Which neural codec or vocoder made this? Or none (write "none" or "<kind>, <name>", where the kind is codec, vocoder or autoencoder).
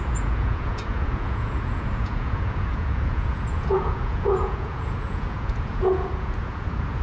vocoder, Vocos